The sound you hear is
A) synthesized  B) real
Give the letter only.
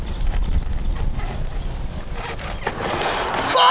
B